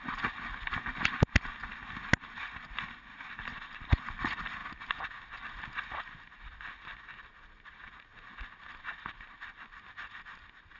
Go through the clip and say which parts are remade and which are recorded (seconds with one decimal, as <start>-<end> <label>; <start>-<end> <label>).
0.0-10.8 recorded